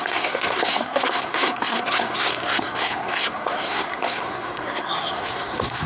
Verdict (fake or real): fake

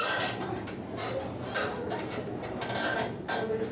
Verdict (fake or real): real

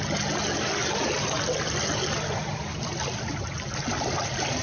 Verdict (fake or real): real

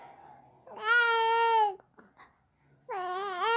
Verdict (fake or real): real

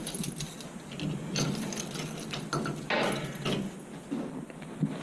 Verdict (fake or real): real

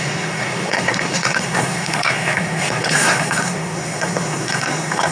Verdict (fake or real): fake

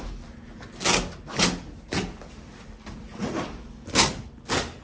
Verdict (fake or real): real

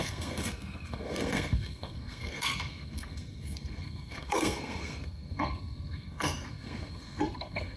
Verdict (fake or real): fake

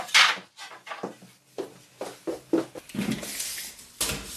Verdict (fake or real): real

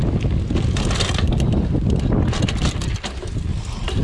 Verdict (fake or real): real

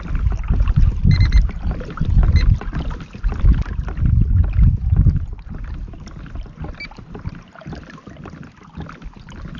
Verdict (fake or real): real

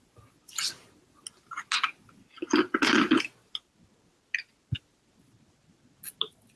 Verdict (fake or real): real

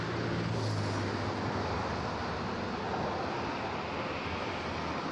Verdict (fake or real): real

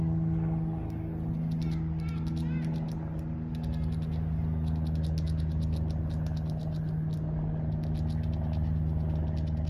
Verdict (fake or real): real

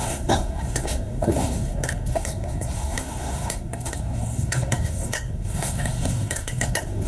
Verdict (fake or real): fake